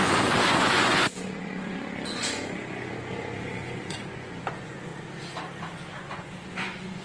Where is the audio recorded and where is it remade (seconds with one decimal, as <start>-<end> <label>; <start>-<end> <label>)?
0.0-4.9 remade; 4.9-5.9 recorded; 5.9-7.0 remade